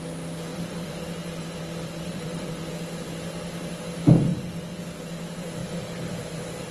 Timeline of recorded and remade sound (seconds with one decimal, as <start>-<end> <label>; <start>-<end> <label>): 0.0-0.5 recorded; 0.5-2.7 remade; 2.7-4.3 recorded; 4.3-4.8 remade; 4.8-5.6 recorded; 5.6-6.1 remade; 6.1-6.7 recorded